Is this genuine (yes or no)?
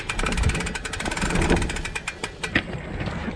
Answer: yes